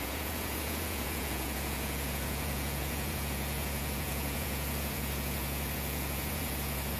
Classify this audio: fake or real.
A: fake